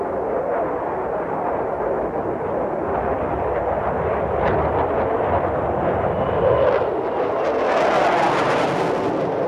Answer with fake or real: real